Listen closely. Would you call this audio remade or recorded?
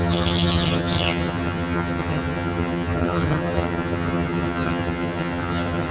remade